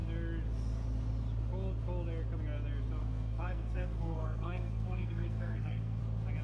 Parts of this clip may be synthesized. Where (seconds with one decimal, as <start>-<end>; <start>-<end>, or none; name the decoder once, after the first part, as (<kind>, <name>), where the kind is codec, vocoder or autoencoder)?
3.0-6.0 (codec, SNAC)